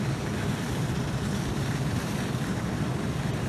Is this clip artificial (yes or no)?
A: yes